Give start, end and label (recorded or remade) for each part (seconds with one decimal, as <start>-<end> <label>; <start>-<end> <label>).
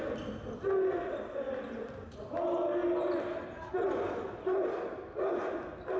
0.0-6.0 recorded